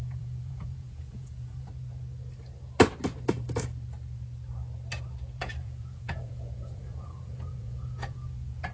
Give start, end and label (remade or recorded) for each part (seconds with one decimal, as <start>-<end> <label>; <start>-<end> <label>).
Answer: 0.0-1.7 remade; 1.7-5.4 recorded; 5.4-8.7 remade